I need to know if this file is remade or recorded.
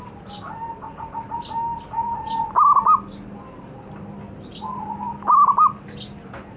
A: recorded